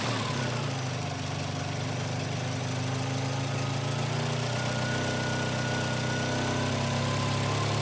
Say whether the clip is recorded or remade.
recorded